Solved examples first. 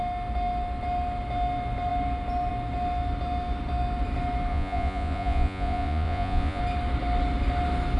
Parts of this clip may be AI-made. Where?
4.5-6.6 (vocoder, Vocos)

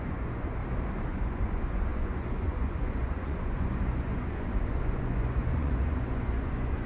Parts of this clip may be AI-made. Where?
0.0-0.6 (vocoder, Vocos); 1.1-6.9

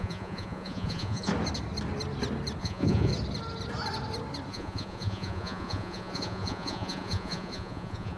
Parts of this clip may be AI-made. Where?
0.0-1.3 (vocoder, Vocos); 2.6-3.1; 4.5-8.2

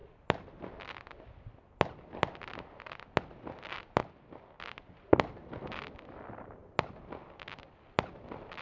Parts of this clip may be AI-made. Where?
none

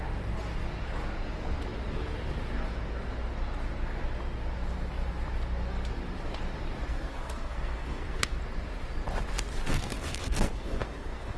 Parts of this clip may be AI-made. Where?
6.9-8.4 (codec, SNAC); 9.7-11.4

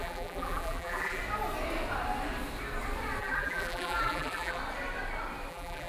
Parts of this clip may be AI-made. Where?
0.0-1.2 (vocoder, BigVGAN v2); 3.2-4.6; 5.5-5.9

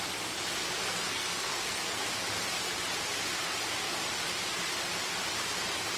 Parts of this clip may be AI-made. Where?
0.8-2.0 (codec, SNAC)

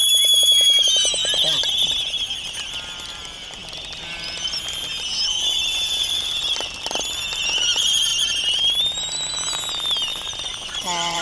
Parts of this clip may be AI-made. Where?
10.1-11.2 (vocoder, Vocos)